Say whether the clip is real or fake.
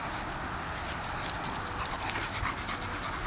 real